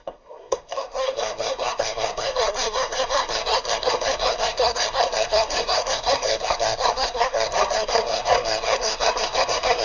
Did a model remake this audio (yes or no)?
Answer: yes